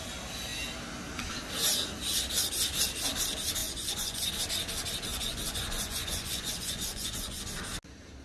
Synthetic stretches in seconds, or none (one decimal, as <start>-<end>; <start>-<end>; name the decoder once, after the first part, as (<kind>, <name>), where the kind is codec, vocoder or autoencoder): 3.6-4.3 (vocoder, Vocos); 5.1-7.4